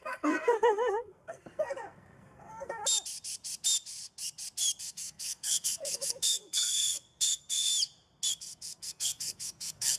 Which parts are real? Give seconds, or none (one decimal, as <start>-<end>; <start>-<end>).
2.8-4.8; 7.7-8.3